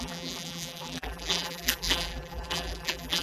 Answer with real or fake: fake